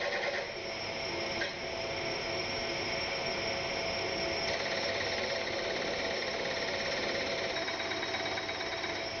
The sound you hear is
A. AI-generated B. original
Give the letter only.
B